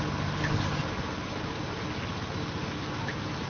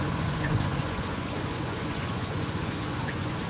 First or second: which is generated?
second